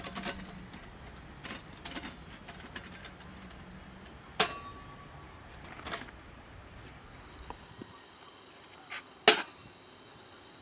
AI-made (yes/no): no